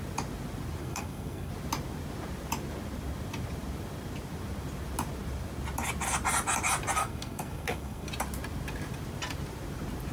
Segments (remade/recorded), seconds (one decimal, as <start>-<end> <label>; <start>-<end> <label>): 0.0-0.8 recorded; 0.8-1.5 remade; 1.5-7.0 recorded; 7.0-8.1 remade; 8.1-10.1 recorded